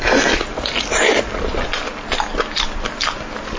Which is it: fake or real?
real